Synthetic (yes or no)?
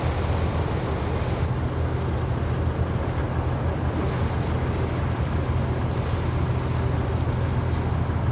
no